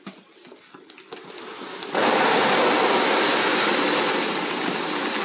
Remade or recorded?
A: recorded